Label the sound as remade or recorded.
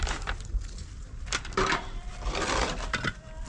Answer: remade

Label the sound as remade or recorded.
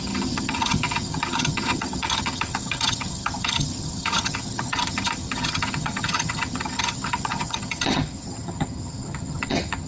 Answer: remade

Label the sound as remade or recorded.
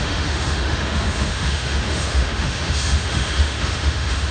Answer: remade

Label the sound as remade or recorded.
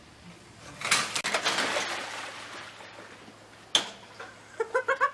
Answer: recorded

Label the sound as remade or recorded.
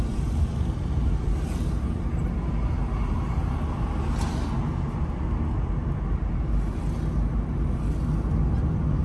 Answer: recorded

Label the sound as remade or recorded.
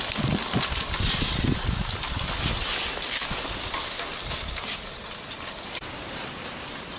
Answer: recorded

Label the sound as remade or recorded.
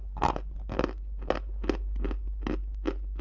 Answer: recorded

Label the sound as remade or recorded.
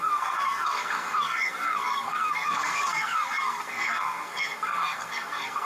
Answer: remade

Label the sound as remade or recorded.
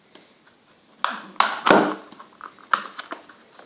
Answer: recorded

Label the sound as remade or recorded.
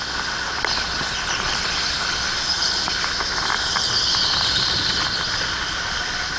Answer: recorded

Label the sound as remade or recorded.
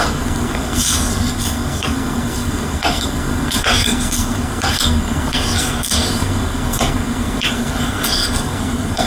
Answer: remade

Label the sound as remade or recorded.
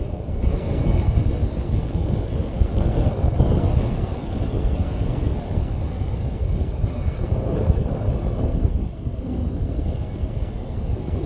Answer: remade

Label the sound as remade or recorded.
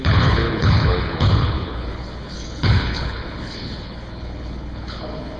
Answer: remade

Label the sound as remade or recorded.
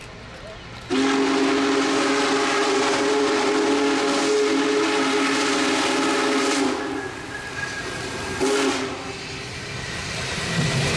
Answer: recorded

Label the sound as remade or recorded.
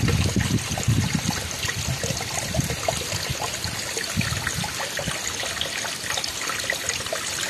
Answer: recorded